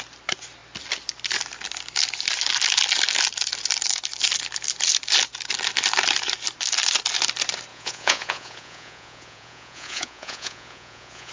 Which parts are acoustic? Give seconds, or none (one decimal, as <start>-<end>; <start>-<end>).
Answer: 0.0-7.7